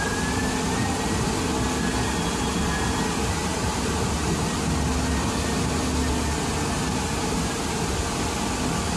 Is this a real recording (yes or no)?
yes